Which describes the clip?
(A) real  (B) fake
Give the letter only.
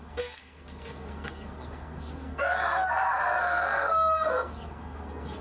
B